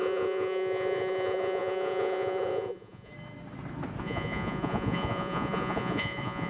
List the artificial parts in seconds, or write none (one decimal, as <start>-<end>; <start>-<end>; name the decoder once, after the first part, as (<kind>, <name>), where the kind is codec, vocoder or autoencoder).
0.0-3.1 (vocoder, Vocos); 4.0-6.5

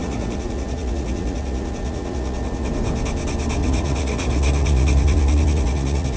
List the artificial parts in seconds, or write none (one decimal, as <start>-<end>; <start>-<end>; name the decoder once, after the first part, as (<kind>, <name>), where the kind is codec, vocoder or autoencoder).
0.0-2.7 (vocoder, Vocos); 3.6-6.2